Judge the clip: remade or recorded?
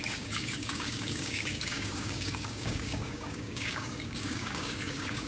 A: remade